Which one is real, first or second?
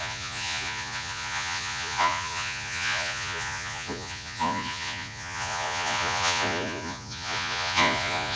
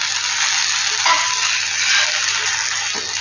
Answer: second